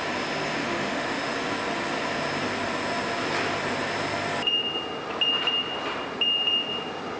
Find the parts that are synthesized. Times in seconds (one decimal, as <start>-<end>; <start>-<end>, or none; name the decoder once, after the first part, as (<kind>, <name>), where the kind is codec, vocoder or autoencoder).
0.6-1.3 (autoencoder, DAC-VAE)